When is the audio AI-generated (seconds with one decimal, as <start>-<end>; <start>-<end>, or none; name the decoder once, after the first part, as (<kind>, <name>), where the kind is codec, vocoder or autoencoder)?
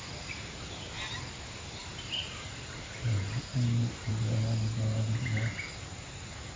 1.8-4.1 (vocoder, BigVGAN v2)